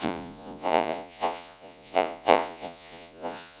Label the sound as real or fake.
fake